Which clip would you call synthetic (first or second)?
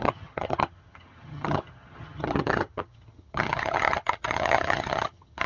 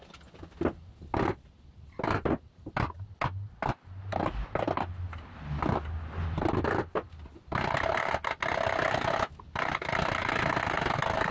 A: first